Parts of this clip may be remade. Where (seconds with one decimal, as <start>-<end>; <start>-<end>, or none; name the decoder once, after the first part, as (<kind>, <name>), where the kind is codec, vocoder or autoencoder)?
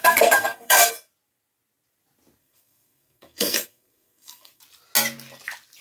0.0-0.9 (codec, SNAC); 2.4-4.6